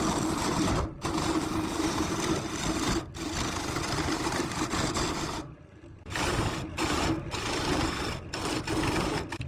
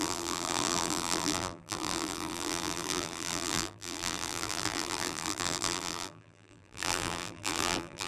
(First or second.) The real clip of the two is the first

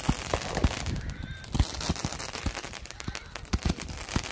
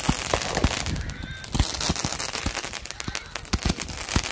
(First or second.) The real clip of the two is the second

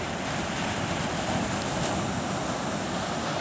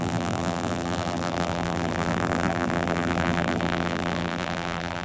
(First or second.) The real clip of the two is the first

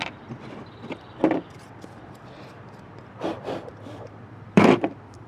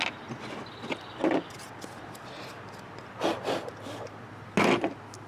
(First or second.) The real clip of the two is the second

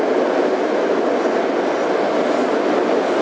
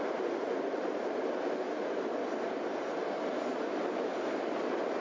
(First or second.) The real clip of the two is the first